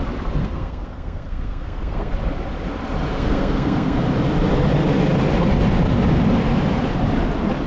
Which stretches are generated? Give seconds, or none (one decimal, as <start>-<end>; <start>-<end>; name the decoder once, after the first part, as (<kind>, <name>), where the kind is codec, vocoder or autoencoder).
0.4-2.1 (codec, SNAC); 3.1-4.0